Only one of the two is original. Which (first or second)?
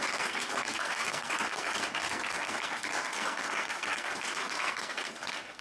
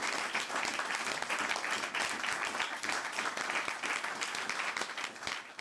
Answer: second